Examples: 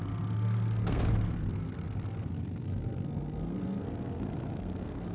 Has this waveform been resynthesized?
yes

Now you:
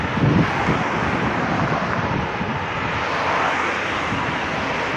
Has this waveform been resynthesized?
no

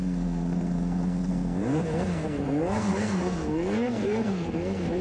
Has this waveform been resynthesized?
yes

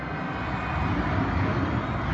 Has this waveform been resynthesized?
no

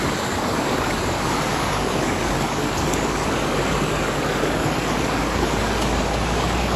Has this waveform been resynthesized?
yes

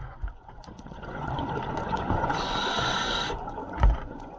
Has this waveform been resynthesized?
yes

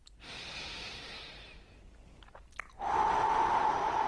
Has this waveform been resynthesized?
no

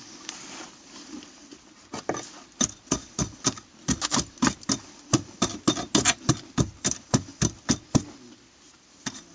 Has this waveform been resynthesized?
no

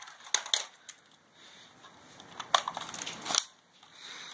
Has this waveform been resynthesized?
no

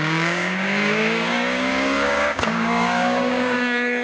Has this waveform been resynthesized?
yes